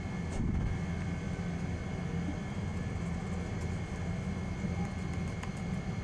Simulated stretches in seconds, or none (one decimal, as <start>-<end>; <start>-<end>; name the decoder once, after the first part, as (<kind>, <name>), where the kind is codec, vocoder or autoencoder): none

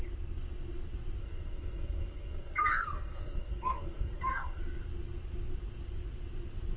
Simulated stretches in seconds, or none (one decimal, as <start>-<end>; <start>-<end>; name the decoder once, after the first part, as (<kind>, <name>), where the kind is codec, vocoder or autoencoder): 1.2-4.6 (codec, SNAC)